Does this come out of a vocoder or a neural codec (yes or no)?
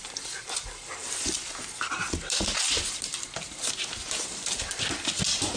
no